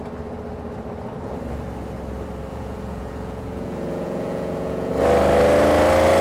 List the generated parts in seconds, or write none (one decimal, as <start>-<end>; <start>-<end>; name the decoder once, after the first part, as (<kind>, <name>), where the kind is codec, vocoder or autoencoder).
2.5-4.9 (vocoder, Vocos)